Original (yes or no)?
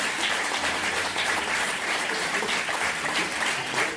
no